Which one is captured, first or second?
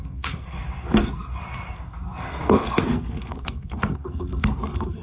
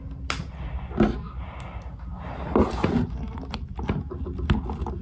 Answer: second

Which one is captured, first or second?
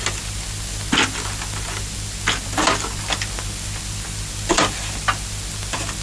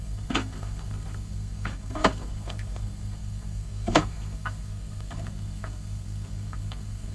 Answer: first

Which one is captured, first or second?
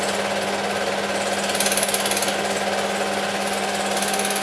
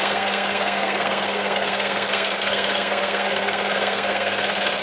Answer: first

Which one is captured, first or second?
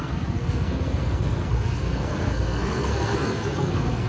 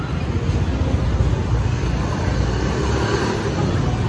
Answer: second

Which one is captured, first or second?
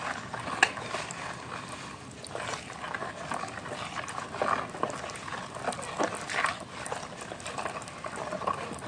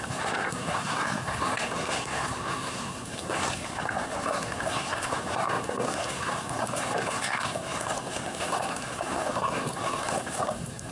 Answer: first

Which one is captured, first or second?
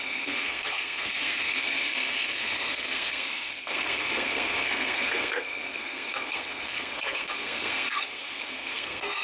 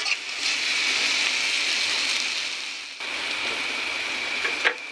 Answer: second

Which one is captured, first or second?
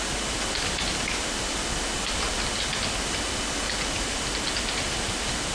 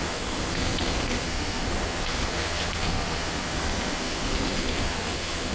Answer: first